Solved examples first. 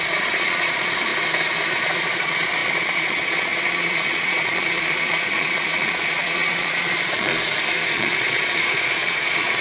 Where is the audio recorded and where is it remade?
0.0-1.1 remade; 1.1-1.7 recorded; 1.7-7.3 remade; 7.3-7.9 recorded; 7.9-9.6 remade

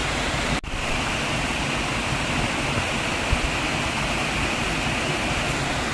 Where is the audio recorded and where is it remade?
0.0-1.0 remade; 1.0-5.9 recorded